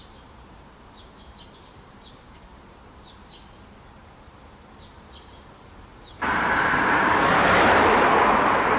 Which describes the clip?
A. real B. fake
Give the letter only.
B